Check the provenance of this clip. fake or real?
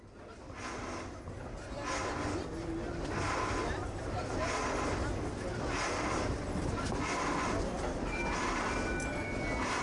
real